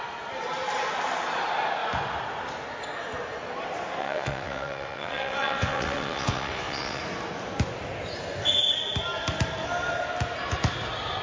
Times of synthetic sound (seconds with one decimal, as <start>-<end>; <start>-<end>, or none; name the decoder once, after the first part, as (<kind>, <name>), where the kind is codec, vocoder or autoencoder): 4.0-7.0 (vocoder, WaveNeXt)